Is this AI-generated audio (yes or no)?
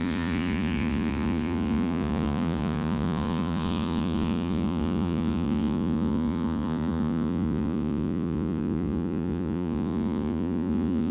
yes